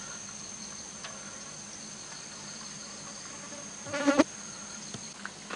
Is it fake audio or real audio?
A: real